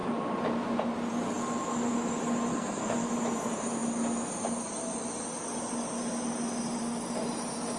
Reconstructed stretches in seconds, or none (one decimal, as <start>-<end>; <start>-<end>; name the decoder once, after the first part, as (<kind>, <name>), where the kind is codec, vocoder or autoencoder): 2.5-3.1 (codec, SNAC)